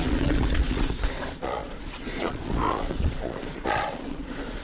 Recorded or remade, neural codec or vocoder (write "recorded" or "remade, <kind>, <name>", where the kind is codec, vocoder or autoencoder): remade, vocoder, Vocos